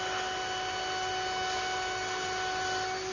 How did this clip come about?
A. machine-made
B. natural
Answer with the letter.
B